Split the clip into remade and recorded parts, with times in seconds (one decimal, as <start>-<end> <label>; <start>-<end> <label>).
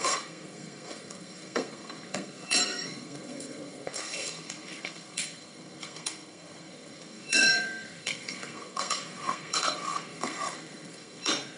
0.0-11.6 remade